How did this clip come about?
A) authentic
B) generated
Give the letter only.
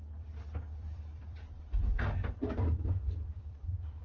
B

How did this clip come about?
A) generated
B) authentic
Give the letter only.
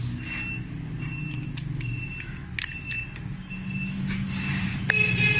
B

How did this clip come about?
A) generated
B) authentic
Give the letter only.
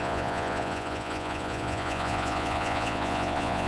A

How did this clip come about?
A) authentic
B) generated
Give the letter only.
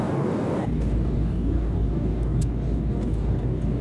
B